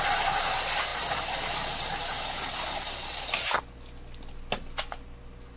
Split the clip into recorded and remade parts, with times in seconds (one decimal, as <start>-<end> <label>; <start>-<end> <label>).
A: 0.0-5.6 recorded